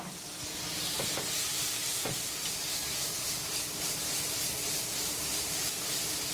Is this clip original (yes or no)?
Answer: no